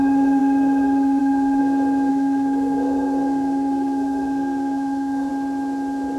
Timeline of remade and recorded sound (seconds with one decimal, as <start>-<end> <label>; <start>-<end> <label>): 0.0-1.6 remade; 1.6-2.1 recorded; 2.1-5.3 remade; 5.3-6.2 recorded